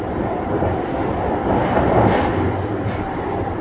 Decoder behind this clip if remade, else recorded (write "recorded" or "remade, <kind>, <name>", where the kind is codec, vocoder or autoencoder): recorded